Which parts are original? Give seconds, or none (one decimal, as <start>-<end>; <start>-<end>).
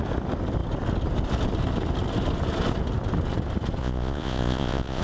0.0-3.8